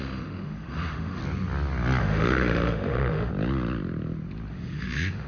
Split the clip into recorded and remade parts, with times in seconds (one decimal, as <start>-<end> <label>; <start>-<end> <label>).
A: 0.0-1.2 remade; 1.2-2.0 recorded; 2.0-3.3 remade; 3.3-4.5 recorded; 4.5-5.3 remade